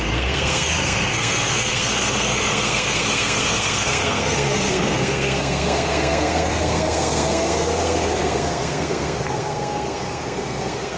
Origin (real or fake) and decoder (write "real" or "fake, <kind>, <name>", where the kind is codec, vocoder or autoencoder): fake, codec, SNAC